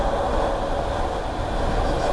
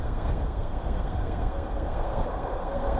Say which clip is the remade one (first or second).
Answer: second